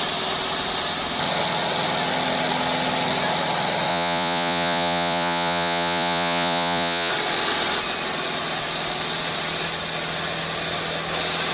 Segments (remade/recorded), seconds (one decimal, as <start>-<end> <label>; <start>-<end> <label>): 0.0-3.9 recorded; 3.9-7.1 remade; 7.1-11.5 recorded